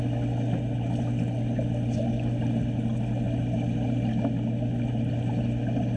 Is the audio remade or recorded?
recorded